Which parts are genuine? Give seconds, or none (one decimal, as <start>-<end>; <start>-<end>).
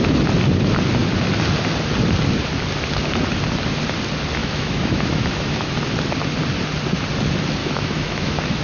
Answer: 0.0-4.4; 5.7-7.6